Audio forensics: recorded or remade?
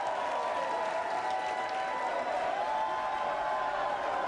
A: recorded